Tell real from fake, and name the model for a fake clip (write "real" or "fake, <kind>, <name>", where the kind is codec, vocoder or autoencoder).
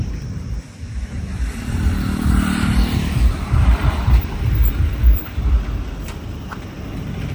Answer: fake, vocoder, BigVGAN v2